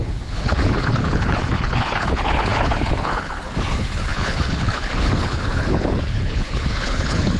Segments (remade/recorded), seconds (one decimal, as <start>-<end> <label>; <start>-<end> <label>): 0.0-7.4 remade